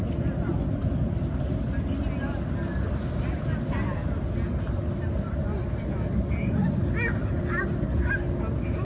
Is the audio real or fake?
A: real